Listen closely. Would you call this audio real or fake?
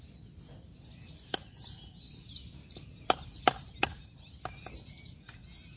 real